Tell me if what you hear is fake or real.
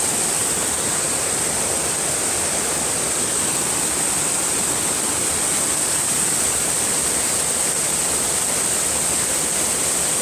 real